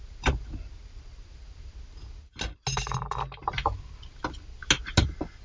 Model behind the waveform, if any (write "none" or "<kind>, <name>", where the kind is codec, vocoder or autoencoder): none